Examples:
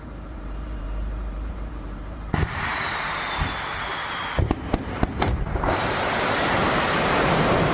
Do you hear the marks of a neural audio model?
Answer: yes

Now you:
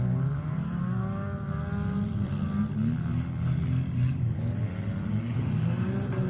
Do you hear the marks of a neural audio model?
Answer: no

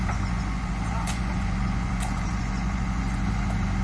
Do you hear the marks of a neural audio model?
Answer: yes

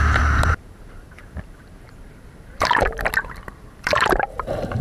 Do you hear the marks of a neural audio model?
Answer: yes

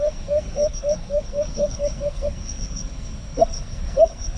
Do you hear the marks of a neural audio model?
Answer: yes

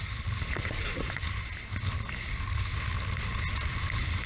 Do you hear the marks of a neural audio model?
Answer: no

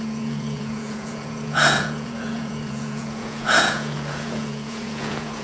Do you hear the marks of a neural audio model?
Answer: yes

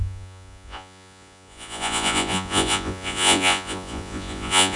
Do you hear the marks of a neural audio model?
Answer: yes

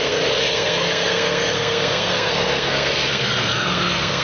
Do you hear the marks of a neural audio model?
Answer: yes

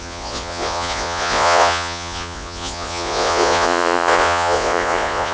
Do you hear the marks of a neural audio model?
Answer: yes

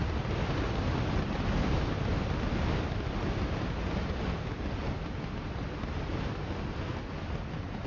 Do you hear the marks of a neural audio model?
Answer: no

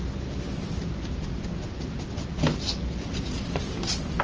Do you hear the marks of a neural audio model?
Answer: no